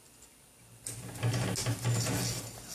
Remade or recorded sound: recorded